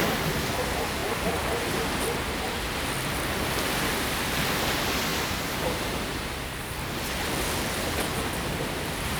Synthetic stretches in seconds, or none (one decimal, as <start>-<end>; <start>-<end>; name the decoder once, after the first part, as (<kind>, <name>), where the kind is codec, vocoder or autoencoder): 5.1-6.8 (vocoder, BigVGAN v2)